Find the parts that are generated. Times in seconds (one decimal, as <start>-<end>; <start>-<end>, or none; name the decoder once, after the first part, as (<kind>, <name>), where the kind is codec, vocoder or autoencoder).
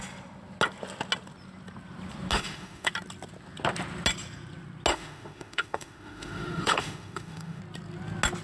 2.3-2.9 (autoencoder, DAC-VAE); 4.9-7.6